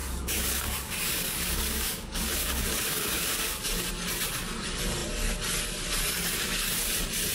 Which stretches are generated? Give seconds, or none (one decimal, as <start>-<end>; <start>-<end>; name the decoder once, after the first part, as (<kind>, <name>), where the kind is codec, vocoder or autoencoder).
0.0-3.9 (codec, DAC)